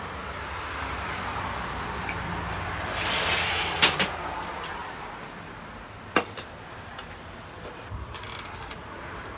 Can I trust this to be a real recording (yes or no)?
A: yes